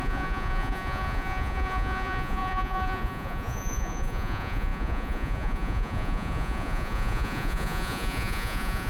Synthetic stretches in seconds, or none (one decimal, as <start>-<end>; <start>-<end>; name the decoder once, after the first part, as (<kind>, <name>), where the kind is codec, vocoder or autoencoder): 0.0-8.9 (vocoder, Vocos)